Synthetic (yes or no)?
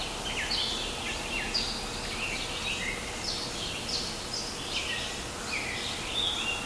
no